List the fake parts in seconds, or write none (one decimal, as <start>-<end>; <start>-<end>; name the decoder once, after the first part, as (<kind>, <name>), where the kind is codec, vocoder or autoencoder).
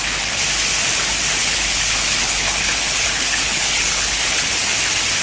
1.4-4.5 (codec, HILCodec)